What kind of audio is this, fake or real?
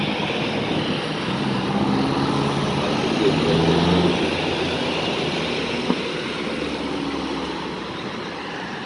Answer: real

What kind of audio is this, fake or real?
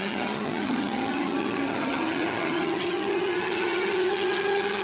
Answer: fake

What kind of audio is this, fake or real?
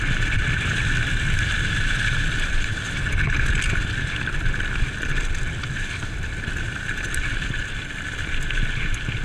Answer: real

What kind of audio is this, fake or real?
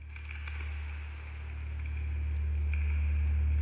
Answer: real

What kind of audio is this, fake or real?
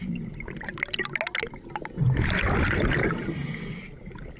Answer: real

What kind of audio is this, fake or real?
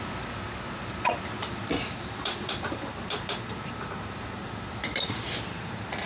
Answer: fake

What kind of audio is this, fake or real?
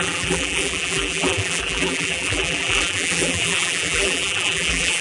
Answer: fake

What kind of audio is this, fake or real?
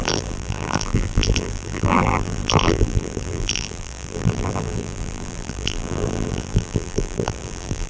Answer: fake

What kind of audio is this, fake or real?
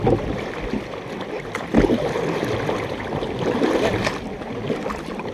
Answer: real